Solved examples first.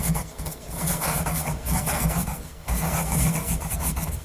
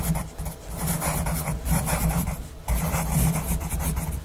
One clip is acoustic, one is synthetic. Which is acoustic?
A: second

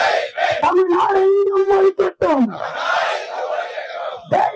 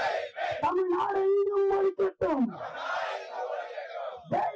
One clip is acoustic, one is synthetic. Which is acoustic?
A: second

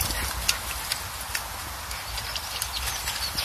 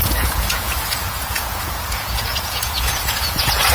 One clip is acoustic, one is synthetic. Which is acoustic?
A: first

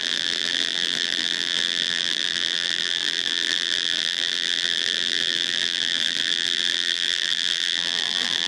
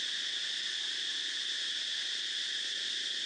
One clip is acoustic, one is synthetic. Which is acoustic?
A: second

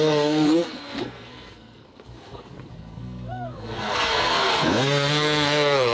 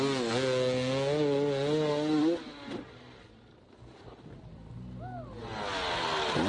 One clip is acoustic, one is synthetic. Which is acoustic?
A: second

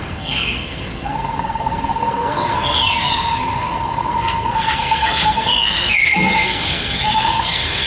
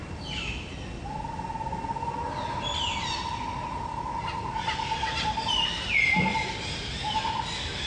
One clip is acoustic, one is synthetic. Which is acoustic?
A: second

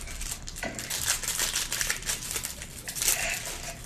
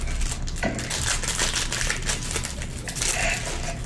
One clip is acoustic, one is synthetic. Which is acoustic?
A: second